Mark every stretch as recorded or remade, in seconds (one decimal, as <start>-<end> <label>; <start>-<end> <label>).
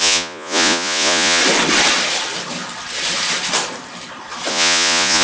0.0-1.4 remade; 1.4-4.5 recorded; 4.5-5.2 remade